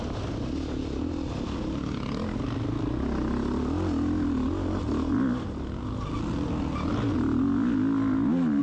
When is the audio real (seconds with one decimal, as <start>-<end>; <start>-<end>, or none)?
0.0-8.6